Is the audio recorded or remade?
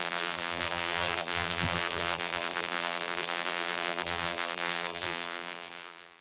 remade